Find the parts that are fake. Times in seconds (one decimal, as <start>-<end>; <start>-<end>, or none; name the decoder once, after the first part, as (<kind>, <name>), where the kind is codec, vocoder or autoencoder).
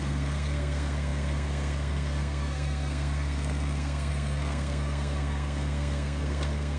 0.0-6.8 (codec, SNAC)